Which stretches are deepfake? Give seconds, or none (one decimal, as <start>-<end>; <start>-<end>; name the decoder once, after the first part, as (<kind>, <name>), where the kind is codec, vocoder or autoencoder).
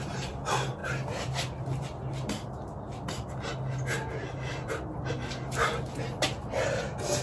none